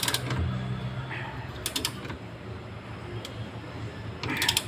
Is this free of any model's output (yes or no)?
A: yes